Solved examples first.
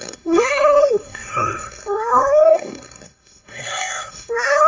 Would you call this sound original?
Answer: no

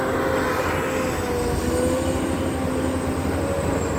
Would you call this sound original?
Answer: yes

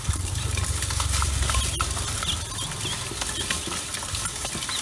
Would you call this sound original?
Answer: yes